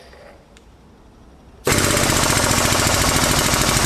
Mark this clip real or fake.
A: real